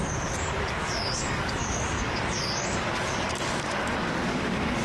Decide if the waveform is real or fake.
fake